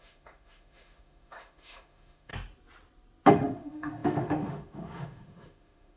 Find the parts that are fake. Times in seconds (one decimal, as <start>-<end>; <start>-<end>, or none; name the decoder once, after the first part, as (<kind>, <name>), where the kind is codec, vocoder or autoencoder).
0.0-2.3 (autoencoder, DAC-VAE); 3.3-6.0